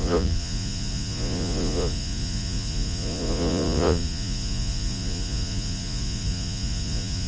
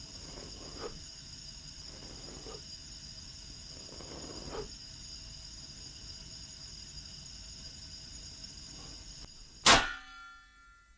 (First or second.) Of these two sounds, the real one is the second